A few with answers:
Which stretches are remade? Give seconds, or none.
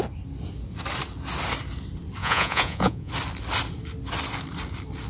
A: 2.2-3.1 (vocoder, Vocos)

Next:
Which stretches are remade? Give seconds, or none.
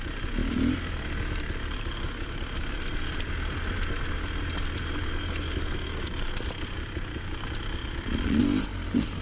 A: 7.8-8.4 (vocoder, Vocos)